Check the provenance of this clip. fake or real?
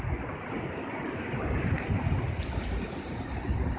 real